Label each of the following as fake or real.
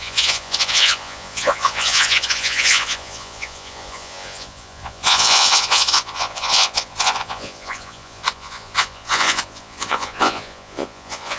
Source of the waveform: fake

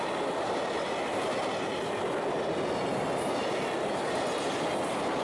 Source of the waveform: real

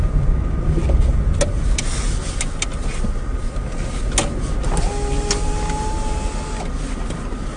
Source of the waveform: real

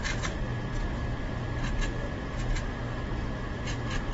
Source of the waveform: real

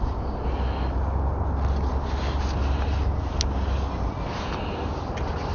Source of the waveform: real